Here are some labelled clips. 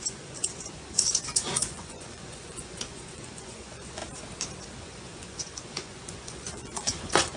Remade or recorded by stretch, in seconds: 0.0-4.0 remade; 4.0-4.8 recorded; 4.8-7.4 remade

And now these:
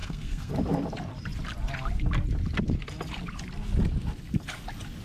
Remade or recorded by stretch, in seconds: 0.0-0.5 remade; 0.5-5.0 recorded

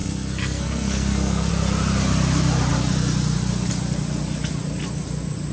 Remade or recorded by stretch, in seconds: 0.0-1.5 remade; 1.5-5.5 recorded

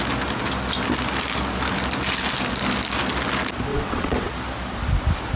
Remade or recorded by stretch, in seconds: 0.0-3.7 recorded; 3.7-4.3 remade; 4.3-5.4 recorded

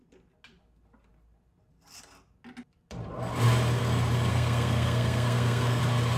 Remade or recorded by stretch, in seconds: 0.0-4.3 recorded; 4.3-5.8 remade; 5.8-6.2 recorded

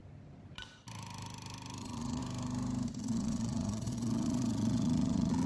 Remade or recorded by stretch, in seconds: 0.0-1.8 recorded; 1.8-2.2 remade; 2.2-3.0 recorded; 3.0-5.5 remade

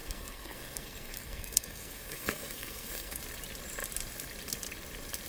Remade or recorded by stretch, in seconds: 0.0-3.2 remade; 3.2-5.3 recorded